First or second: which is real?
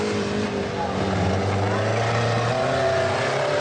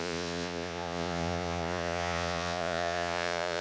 first